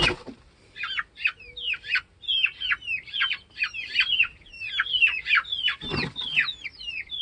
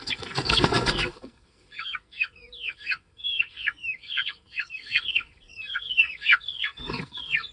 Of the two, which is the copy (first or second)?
second